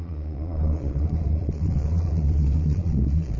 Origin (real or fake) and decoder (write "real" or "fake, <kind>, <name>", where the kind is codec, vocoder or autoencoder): fake, vocoder, Vocos